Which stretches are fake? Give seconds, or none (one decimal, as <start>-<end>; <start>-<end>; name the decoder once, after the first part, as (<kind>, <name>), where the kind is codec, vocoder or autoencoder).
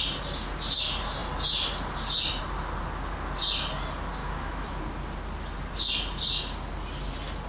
4.2-4.8 (autoencoder, DAC-VAE)